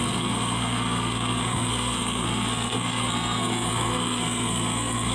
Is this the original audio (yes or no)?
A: no